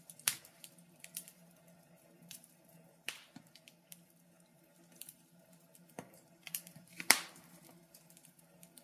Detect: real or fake fake